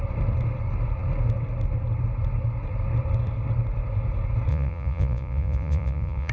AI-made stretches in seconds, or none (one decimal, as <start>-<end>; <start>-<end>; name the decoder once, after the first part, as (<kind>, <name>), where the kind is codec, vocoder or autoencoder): 4.5-6.3 (vocoder, Vocos)